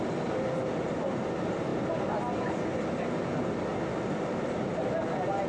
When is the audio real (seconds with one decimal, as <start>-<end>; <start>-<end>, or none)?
0.0-5.5